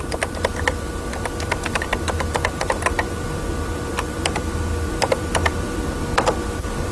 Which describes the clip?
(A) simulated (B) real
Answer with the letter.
A